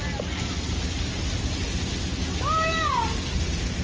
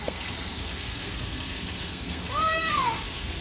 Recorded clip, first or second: first